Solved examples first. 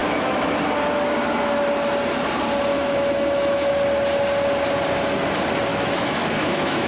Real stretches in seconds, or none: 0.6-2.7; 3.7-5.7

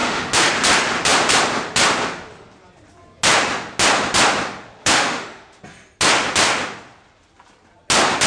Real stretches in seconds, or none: 0.5-4.8; 5.6-8.3

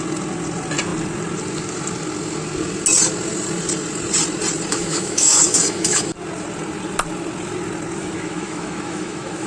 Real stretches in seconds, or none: 0.0-4.7; 6.1-8.0